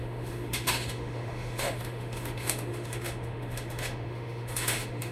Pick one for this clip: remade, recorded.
remade